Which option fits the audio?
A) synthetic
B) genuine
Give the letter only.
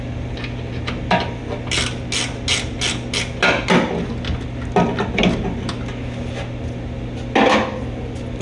B